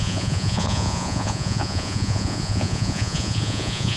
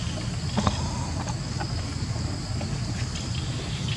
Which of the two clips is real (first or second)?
second